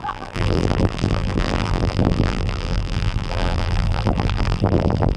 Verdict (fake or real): fake